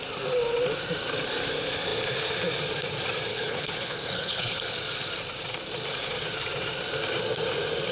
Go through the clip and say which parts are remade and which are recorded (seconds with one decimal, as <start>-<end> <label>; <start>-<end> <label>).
0.0-3.3 recorded; 3.3-4.6 remade; 4.6-7.9 recorded